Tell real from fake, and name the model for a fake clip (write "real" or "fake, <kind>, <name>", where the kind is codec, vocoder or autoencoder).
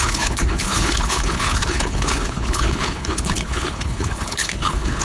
fake, codec, HILCodec